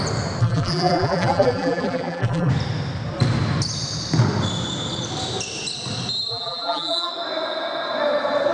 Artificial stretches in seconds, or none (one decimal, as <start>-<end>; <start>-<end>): 0.4-2.5; 6.3-7.1

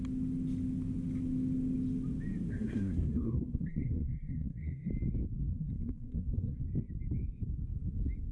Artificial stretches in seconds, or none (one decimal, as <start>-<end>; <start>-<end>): 2.5-4.9; 5.5-6.6